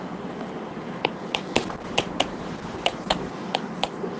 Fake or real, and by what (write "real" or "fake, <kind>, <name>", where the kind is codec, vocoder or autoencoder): real